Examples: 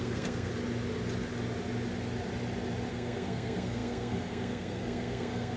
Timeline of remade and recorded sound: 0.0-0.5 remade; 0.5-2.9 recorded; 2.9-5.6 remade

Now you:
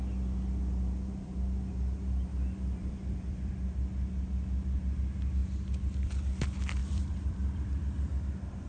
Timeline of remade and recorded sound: 0.0-2.3 recorded; 2.3-3.5 remade; 3.5-6.8 recorded; 6.8-8.7 remade

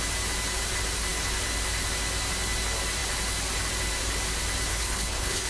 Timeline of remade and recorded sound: 0.0-4.7 recorded; 4.7-5.5 remade

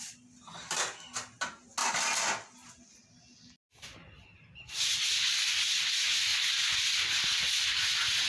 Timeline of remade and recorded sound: 0.0-8.3 recorded

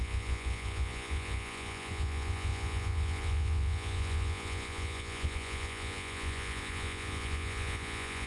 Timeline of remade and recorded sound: 0.0-8.3 remade